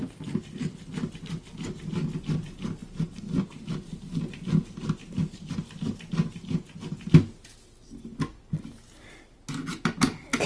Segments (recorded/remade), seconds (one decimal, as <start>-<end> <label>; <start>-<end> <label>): 0.0-10.5 recorded